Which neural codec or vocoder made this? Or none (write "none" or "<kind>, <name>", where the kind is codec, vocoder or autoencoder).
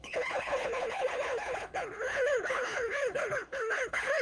codec, HILCodec